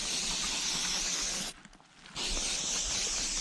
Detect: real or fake real